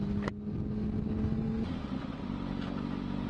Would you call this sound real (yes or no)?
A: yes